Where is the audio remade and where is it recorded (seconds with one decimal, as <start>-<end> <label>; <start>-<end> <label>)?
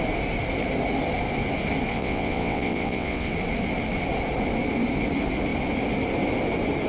0.0-1.9 recorded; 1.9-3.3 remade; 3.3-6.9 recorded